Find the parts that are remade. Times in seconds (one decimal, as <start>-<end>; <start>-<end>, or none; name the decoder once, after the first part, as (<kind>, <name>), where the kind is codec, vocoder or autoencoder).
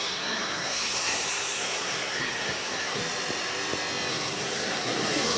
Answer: 0.0-3.0 (codec, SNAC); 4.1-5.4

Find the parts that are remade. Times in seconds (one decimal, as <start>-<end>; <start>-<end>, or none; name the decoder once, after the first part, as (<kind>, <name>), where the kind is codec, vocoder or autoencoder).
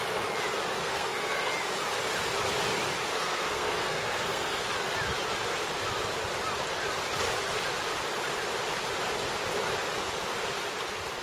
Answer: 0.8-1.5 (codec, SNAC); 3.1-4.7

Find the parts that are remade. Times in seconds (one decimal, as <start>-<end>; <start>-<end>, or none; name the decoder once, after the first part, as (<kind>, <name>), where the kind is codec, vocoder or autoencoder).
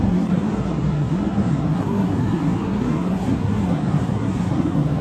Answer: 0.0-5.0 (codec, SNAC)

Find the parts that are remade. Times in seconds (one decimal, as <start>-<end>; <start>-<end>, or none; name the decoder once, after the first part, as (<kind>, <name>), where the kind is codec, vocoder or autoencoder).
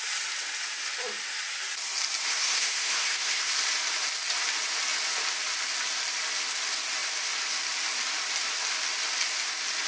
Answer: 2.3-3.5 (codec, SNAC)